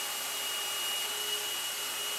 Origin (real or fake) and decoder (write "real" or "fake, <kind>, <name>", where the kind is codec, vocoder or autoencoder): real